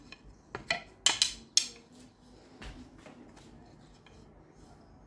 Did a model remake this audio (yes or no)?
no